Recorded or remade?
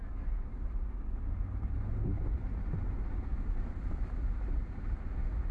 recorded